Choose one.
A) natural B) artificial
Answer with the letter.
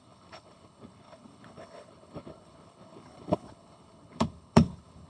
B